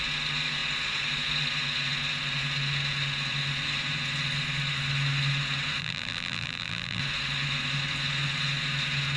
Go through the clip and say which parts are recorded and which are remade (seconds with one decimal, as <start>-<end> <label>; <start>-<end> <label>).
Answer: 0.0-5.8 recorded; 5.8-7.0 remade; 7.0-9.2 recorded